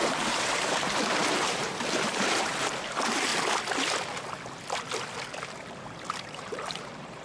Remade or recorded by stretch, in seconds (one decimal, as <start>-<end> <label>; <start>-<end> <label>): 0.0-3.3 remade; 3.3-6.1 recorded; 6.1-7.2 remade